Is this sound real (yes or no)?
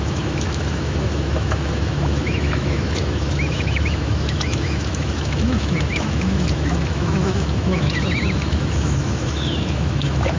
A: no